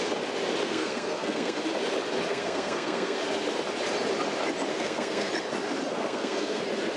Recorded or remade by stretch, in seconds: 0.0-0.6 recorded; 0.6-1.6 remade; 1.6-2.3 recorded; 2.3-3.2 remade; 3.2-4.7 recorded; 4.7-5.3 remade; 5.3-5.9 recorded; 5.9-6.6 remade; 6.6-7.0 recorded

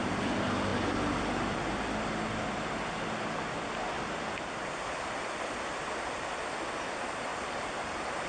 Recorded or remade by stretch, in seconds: 0.0-7.3 recorded; 7.3-8.3 remade

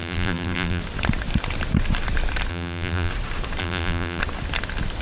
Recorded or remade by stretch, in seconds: 0.0-0.8 remade; 0.8-2.5 recorded; 2.5-3.1 remade; 3.1-3.6 recorded; 3.6-4.2 remade; 4.2-5.0 recorded

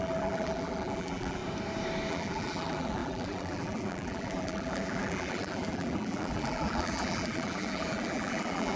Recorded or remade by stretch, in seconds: 0.0-1.4 remade; 1.4-2.1 recorded; 2.1-8.8 remade

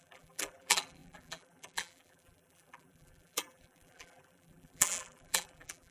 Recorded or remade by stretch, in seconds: 0.0-5.9 remade

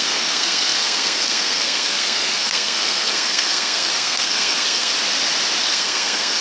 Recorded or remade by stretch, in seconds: 0.0-4.9 remade; 4.9-5.6 recorded; 5.6-6.4 remade

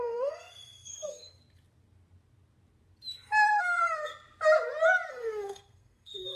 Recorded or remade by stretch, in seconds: 0.0-1.4 remade; 1.4-3.6 recorded; 3.6-4.1 remade; 4.1-5.1 recorded; 5.1-6.4 remade